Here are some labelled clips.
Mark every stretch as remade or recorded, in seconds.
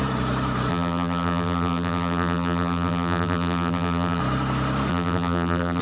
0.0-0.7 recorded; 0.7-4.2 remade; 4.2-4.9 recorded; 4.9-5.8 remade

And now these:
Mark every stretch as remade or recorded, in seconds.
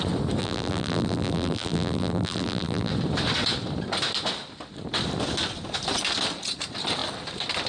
0.0-0.4 recorded; 0.4-2.9 remade; 2.9-7.7 recorded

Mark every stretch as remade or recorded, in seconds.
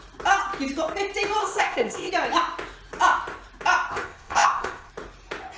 0.0-1.4 recorded; 1.4-2.1 remade; 2.1-3.9 recorded; 3.9-4.9 remade; 4.9-5.6 recorded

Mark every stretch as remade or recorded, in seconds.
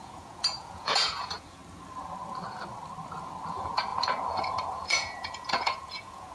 0.0-1.6 remade; 1.6-3.5 recorded; 3.5-6.3 remade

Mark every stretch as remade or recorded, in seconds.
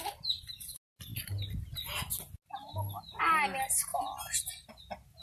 0.0-5.2 recorded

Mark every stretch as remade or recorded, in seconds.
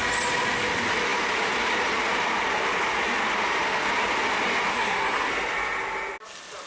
0.0-4.7 recorded; 4.7-5.3 remade; 5.3-6.7 recorded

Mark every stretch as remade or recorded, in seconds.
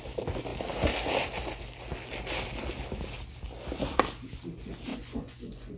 0.0-4.9 recorded; 4.9-5.8 remade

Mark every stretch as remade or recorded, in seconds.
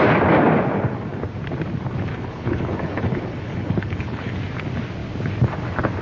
0.0-2.1 recorded; 2.1-4.3 remade; 4.3-6.0 recorded